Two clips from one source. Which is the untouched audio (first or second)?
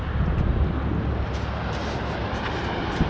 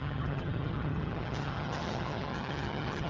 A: first